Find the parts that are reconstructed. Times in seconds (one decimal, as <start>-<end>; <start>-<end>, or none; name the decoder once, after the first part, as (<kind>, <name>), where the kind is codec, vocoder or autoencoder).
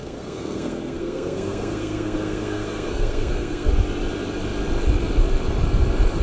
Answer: 0.0-3.7 (codec, SNAC)